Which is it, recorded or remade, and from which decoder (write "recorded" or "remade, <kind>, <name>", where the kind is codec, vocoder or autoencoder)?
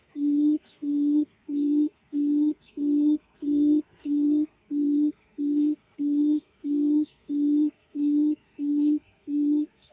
remade, codec, SNAC